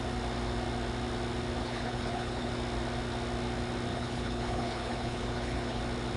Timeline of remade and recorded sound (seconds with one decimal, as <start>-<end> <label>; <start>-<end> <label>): 0.0-1.6 recorded; 1.6-2.5 remade; 2.5-3.9 recorded; 3.9-5.8 remade; 5.8-6.2 recorded